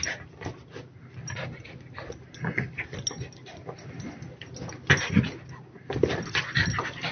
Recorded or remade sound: recorded